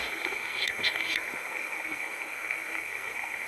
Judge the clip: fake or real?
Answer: fake